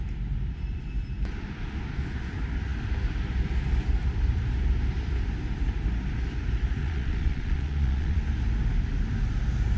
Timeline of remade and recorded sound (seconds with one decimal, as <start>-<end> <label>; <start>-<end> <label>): 0.0-6.8 recorded; 6.8-8.2 remade; 8.2-9.8 recorded